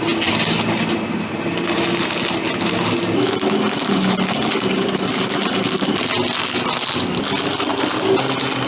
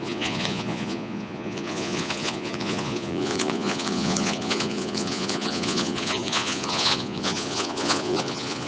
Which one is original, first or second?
first